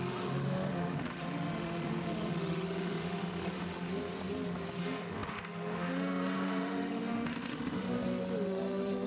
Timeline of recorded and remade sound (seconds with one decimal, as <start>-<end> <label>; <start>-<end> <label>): 0.0-3.9 remade; 3.9-4.8 recorded; 4.8-9.1 remade